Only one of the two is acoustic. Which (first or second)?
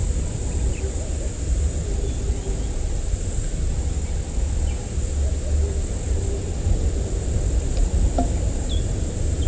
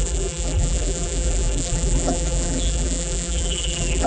first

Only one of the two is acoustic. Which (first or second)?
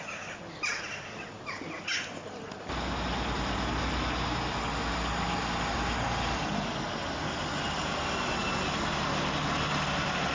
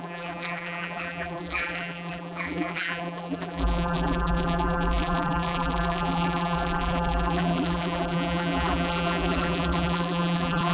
first